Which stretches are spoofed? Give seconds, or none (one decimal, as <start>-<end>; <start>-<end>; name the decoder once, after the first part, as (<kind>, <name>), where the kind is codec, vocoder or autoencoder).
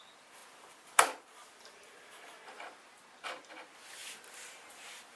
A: none